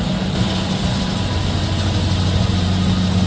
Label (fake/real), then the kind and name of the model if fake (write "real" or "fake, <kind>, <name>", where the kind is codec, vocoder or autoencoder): real